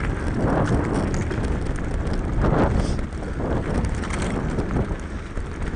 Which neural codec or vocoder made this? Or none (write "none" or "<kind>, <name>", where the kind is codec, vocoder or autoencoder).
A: none